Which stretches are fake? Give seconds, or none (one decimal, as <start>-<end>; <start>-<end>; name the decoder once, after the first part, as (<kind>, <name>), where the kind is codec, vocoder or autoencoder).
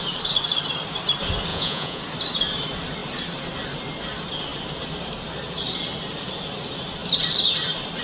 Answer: 1.5-2.0 (vocoder, Vocos)